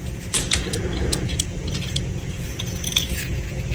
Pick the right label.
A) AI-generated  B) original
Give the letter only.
A